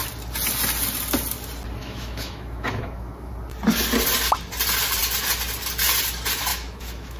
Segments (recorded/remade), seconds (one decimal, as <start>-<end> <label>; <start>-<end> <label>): 0.0-1.8 recorded; 1.8-3.3 remade; 3.3-6.5 recorded; 6.5-7.2 remade